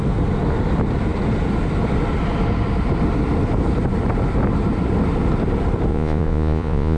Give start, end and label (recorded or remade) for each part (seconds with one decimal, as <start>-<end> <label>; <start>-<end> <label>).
0.0-5.9 recorded; 5.9-7.0 remade